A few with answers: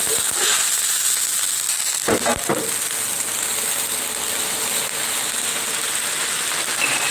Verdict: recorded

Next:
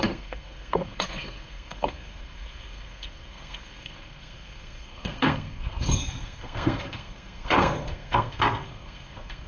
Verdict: remade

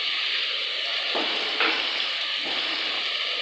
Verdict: recorded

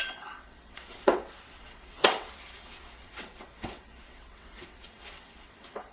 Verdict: remade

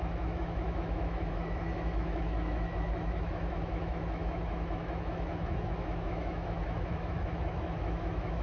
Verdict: remade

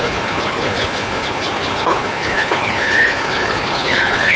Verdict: remade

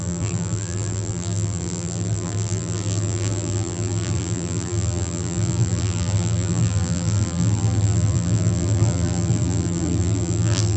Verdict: remade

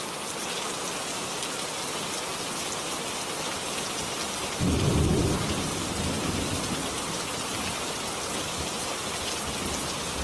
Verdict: recorded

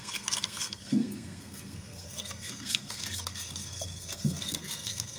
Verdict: remade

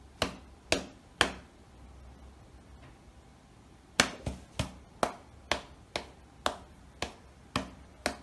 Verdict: recorded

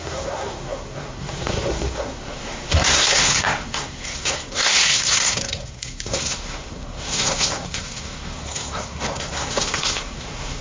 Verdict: remade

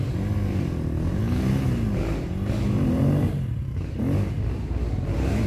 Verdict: recorded